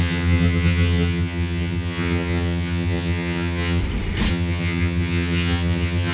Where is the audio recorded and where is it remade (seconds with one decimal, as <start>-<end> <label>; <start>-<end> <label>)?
0.0-3.8 remade; 3.8-4.3 recorded; 4.3-6.1 remade